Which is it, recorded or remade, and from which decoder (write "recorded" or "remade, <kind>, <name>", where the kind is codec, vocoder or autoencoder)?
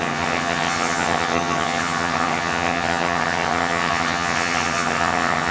remade, vocoder, HiFi-GAN